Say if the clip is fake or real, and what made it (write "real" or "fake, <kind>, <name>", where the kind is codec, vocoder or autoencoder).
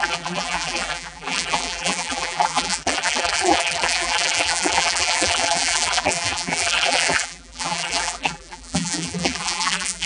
fake, vocoder, BigVGAN v2